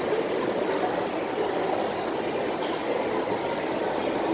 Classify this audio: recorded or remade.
recorded